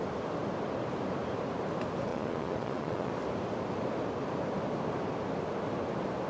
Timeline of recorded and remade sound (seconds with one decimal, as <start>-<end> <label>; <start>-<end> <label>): 0.0-2.1 recorded; 2.1-3.1 remade; 3.1-6.3 recorded